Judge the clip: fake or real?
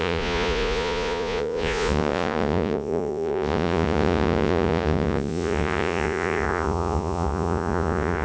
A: fake